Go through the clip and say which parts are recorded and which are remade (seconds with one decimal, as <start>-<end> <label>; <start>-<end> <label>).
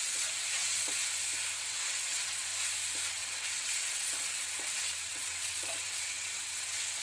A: 0.0-1.0 remade; 1.0-1.6 recorded; 1.6-2.5 remade; 2.5-3.1 recorded; 3.1-7.0 remade